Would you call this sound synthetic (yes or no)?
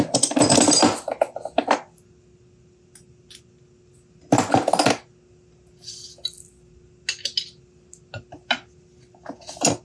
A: no